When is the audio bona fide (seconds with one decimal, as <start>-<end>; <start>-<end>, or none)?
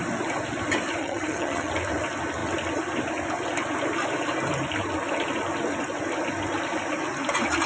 0.0-1.0; 1.7-7.7